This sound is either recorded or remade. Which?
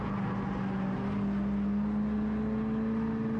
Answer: recorded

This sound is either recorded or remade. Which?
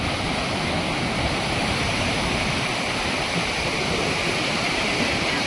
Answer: remade